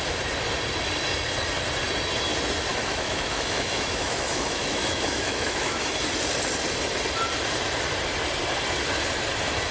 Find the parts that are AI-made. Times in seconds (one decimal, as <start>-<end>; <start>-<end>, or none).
2.7-5.9